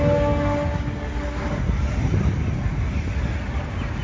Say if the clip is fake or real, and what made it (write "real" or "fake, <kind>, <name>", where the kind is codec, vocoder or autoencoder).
real